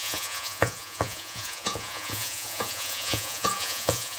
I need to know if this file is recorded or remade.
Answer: remade